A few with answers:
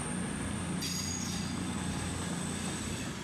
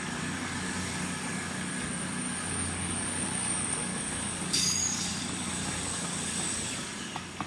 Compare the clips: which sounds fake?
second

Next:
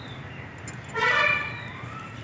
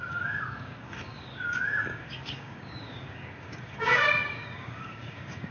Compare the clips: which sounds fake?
second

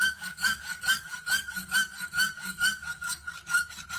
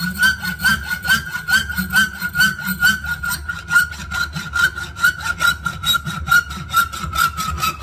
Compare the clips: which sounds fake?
first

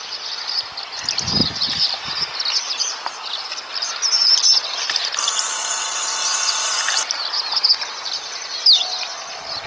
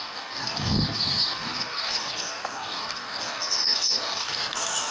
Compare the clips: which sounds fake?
second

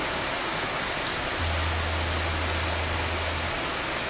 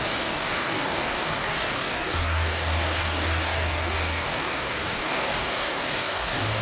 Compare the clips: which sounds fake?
second